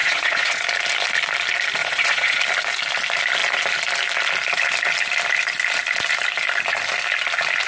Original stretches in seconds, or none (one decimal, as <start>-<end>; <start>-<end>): 0.6-1.8; 2.4-7.7